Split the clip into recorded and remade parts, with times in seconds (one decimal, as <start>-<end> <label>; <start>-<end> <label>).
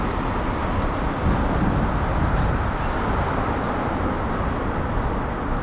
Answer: 0.0-0.6 recorded; 0.6-1.2 remade; 1.2-2.1 recorded; 2.1-3.7 remade; 3.7-5.6 recorded